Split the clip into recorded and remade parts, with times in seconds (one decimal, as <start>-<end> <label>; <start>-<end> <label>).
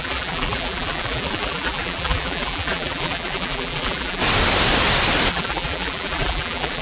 0.0-4.2 remade; 4.2-5.3 recorded; 5.3-6.8 remade